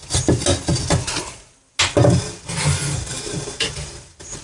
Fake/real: real